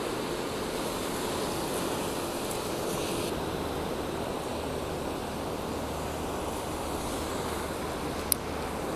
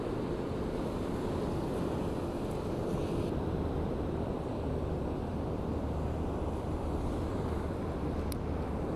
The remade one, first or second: second